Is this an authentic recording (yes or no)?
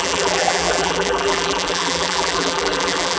no